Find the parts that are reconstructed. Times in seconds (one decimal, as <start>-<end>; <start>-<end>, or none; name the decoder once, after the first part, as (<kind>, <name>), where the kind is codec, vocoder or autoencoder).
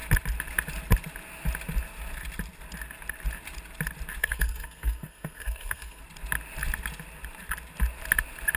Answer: 4.2-6.0 (codec, SNAC)